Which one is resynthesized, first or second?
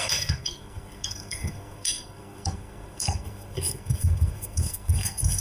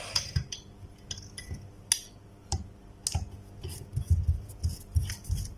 first